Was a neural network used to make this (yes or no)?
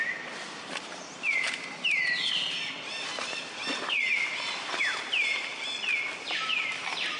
yes